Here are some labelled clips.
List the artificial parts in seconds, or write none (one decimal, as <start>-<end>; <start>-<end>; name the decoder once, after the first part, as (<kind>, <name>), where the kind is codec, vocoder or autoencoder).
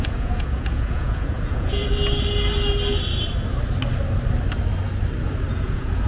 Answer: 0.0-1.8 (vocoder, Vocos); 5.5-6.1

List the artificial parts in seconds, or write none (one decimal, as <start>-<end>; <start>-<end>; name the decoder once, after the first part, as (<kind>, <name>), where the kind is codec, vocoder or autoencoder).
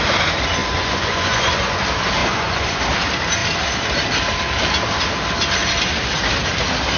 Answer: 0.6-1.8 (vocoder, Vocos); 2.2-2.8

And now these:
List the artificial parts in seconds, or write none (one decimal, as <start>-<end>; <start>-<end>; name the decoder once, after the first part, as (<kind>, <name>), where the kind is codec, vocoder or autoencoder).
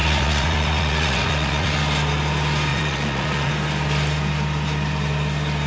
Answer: 0.0-1.8 (vocoder, Vocos); 2.7-3.5